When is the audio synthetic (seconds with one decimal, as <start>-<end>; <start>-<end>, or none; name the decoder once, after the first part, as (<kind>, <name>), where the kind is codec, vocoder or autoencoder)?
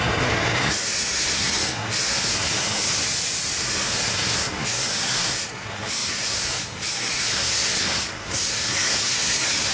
0.0-2.9 (codec, SNAC); 3.6-9.7